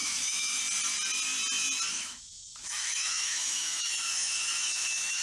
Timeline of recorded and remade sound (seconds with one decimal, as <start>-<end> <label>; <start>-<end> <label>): 0.0-0.6 remade; 0.6-1.9 recorded; 1.9-5.2 remade

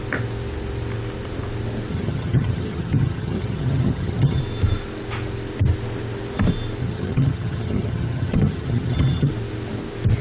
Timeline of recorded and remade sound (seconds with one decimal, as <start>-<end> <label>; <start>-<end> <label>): 0.0-1.9 recorded; 1.9-4.4 remade; 4.4-6.8 recorded; 6.8-9.3 remade; 9.3-10.2 recorded